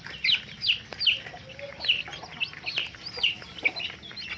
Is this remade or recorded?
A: recorded